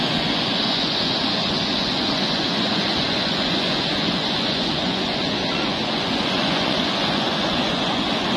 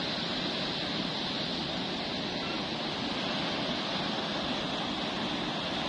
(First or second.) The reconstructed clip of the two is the first